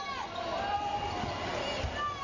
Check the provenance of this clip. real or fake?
real